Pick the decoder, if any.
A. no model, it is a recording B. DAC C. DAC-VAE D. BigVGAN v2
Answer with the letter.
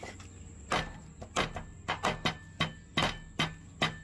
A